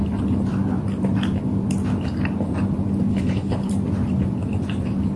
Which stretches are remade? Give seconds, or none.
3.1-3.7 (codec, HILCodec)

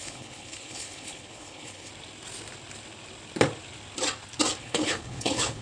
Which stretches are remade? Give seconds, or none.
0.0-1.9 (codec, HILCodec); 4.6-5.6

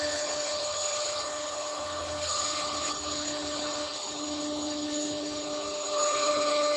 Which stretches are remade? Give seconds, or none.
0.0-6.8 (codec, HILCodec)